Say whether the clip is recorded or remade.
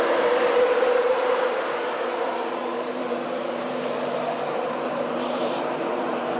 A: remade